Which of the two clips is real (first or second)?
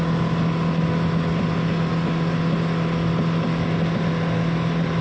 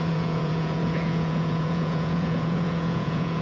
first